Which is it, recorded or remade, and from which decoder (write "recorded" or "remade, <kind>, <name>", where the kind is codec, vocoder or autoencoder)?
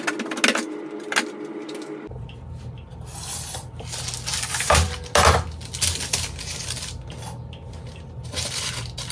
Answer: recorded